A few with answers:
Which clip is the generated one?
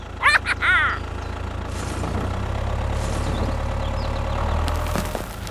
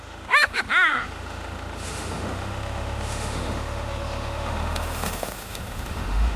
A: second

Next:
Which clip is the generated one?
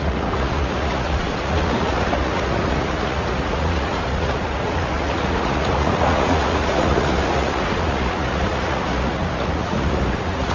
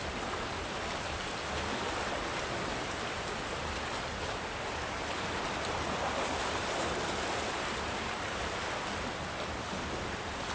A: first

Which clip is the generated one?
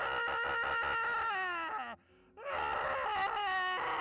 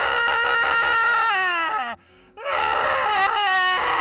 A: second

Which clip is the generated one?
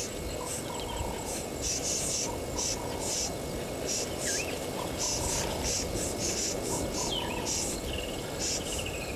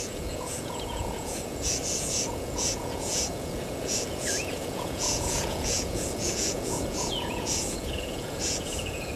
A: second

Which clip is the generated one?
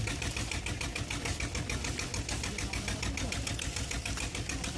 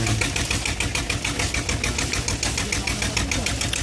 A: first